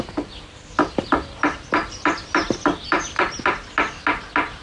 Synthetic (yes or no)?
no